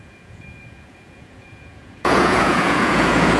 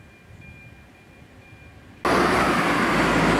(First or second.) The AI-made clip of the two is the first